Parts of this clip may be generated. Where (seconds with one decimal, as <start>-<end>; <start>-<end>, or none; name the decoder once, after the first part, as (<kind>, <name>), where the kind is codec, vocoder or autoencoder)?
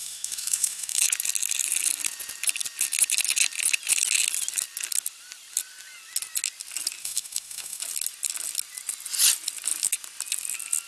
0.0-1.0 (autoencoder, DAC-VAE); 7.0-7.8